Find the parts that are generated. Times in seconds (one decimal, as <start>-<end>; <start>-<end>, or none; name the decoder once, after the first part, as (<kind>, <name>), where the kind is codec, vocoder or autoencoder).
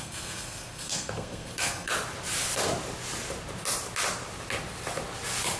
0.0-1.9 (codec, SNAC)